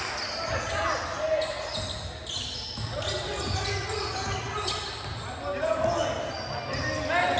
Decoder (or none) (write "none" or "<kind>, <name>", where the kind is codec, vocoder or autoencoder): none